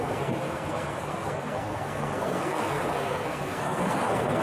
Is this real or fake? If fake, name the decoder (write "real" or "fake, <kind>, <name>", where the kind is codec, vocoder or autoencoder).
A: fake, codec, SNAC